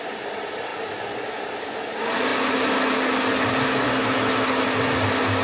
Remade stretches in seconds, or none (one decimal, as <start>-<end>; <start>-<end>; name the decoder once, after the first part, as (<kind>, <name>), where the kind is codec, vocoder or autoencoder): none